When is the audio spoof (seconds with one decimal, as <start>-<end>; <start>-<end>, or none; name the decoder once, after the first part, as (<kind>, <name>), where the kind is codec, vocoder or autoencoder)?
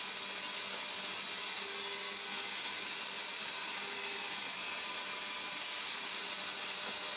3.2-6.0 (vocoder, BigVGAN v2)